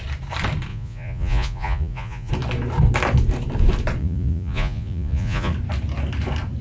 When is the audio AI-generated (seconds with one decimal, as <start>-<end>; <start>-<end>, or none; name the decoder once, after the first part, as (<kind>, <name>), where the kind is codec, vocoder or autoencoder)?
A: 0.7-2.3 (vocoder, Vocos); 4.0-5.5